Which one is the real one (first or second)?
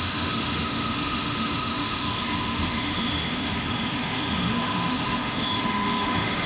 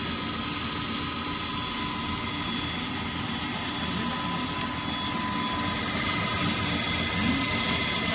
second